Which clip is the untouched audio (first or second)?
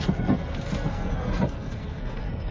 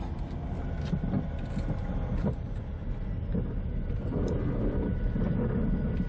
second